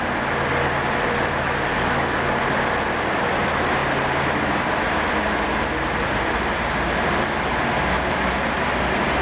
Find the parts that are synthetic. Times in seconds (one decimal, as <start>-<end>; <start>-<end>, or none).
1.7-2.4

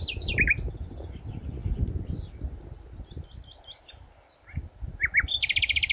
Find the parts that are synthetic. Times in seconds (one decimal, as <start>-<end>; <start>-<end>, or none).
none